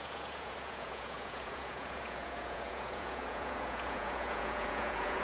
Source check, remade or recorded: remade